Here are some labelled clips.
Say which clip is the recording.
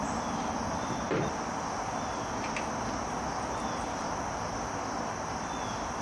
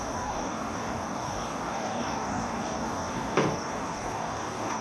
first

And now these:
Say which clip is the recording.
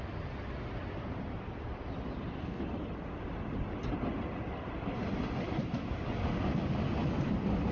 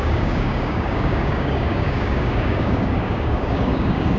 first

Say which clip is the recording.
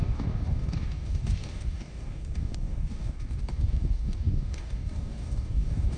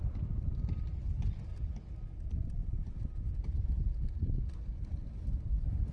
second